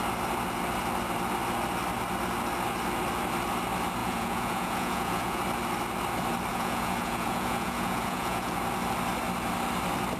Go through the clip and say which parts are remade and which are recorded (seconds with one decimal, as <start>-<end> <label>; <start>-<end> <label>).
0.0-4.0 recorded; 4.0-5.4 remade; 5.4-6.5 recorded; 6.5-8.6 remade; 8.6-10.2 recorded